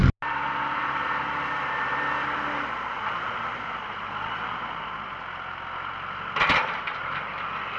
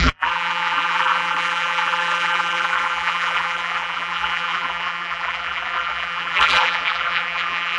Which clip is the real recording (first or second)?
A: first